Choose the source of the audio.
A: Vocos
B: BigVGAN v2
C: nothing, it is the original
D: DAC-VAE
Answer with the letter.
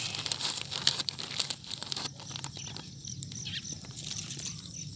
C